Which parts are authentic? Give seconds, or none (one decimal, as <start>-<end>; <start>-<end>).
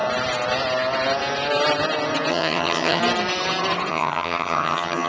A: 0.0-2.3; 3.0-3.9